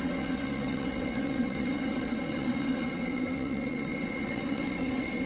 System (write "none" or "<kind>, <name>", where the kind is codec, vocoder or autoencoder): vocoder, WaveNeXt